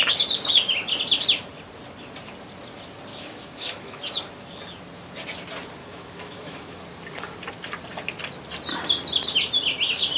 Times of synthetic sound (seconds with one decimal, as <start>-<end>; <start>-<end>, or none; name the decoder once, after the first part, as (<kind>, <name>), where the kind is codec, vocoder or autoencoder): 3.1-4.0 (autoencoder, DAC-VAE); 5.8-6.8